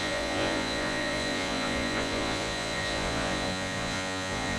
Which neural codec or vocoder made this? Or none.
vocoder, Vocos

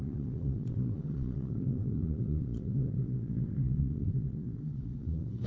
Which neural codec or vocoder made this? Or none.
vocoder, Vocos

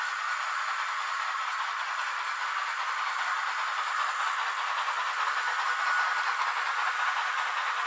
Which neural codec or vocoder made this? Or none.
none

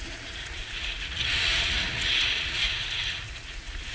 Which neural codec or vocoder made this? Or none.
vocoder, Vocos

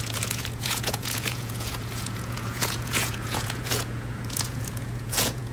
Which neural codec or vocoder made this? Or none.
vocoder, Vocos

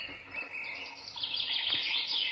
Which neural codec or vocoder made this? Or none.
none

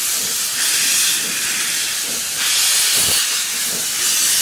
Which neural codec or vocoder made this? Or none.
none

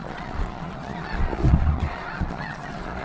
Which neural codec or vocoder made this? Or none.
vocoder, Vocos